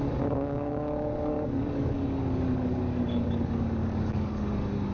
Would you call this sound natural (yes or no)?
no